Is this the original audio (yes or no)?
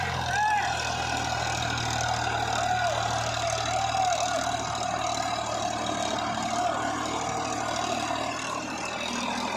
yes